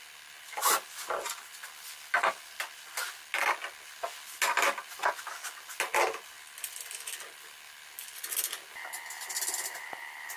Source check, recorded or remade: recorded